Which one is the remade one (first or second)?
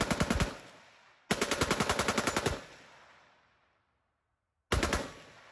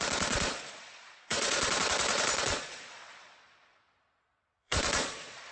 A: second